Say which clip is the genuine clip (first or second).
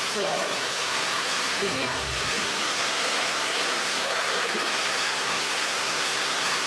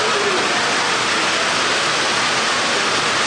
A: second